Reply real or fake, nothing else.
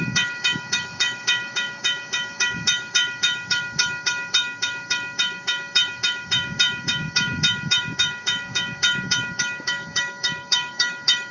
fake